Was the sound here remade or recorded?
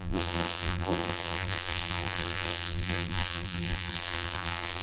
remade